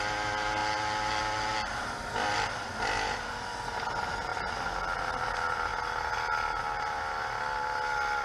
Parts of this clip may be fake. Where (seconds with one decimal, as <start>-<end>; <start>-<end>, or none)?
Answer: none